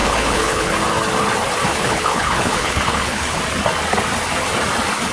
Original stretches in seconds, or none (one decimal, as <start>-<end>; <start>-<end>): 0.7-1.7; 3.4-5.1